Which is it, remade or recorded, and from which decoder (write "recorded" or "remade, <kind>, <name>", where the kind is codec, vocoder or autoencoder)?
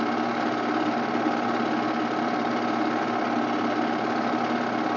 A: recorded